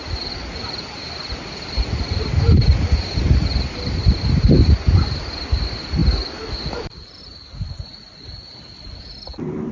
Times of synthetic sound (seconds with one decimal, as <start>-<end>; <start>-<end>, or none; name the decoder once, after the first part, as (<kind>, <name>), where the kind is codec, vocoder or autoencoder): 3.5-5.3 (vocoder, BigVGAN v2)